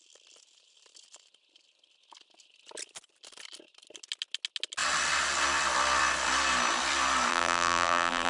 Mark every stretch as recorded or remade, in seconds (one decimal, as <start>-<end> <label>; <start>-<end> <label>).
0.0-7.3 recorded; 7.3-8.3 remade